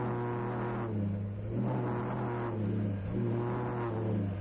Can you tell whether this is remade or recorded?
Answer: recorded